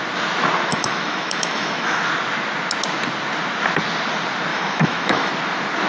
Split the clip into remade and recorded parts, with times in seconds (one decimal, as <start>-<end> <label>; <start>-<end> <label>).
0.0-0.7 recorded; 0.7-2.0 remade; 2.0-4.5 recorded; 4.5-5.3 remade; 5.3-5.9 recorded